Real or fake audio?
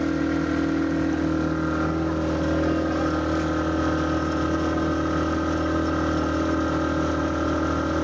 real